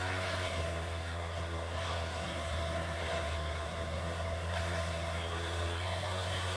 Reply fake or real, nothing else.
fake